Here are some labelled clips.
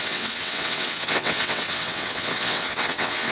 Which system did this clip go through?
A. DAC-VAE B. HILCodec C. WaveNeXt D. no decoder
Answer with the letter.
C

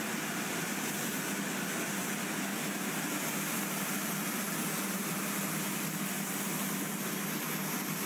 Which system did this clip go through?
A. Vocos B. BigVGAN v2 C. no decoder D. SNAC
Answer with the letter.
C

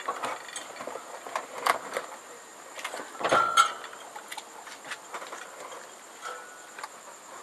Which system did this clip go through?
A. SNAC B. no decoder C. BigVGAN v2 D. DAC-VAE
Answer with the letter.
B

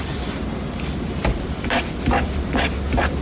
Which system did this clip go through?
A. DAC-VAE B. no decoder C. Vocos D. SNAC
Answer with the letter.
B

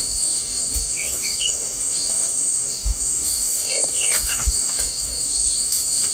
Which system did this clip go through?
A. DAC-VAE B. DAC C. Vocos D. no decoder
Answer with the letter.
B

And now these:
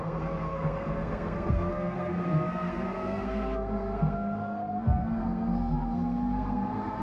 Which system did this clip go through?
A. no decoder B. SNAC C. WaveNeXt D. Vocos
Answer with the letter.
B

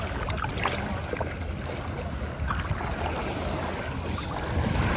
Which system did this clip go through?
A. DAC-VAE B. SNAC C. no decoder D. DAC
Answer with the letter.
C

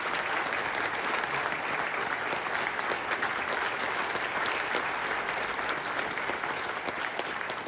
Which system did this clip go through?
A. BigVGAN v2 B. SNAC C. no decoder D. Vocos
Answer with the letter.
C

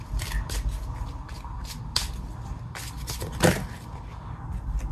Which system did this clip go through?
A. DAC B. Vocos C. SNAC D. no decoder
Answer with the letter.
D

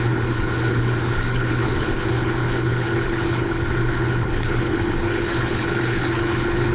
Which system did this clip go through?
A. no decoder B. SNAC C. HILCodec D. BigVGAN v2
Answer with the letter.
C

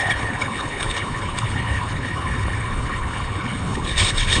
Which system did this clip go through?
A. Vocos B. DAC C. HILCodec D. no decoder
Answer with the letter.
C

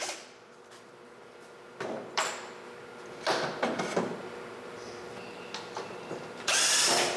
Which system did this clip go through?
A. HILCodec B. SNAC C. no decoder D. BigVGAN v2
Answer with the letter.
D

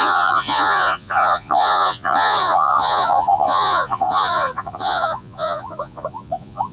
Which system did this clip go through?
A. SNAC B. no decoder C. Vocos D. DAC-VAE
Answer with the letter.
C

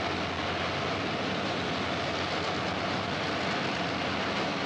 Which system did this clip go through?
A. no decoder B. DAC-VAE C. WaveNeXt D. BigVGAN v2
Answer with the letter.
A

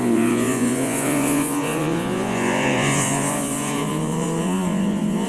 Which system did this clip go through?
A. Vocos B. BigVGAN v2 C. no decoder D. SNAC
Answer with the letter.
A